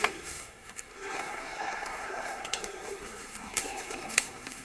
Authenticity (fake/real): fake